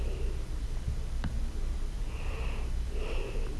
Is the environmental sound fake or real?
real